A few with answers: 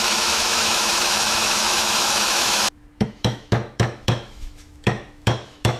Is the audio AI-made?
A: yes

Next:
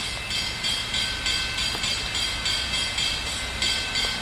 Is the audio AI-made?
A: no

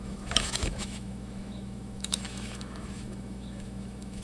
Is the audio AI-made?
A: yes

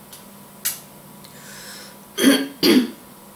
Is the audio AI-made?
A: no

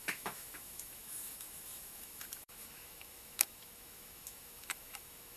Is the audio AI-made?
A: yes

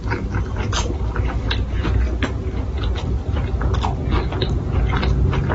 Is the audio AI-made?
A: no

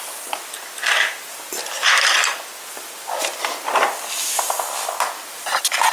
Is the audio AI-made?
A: no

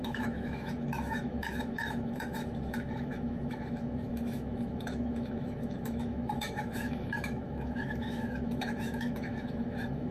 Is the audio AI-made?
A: yes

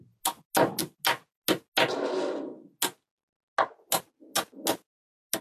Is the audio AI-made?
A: no